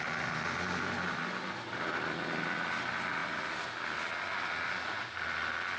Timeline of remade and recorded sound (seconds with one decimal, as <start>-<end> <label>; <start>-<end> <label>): 0.0-5.8 recorded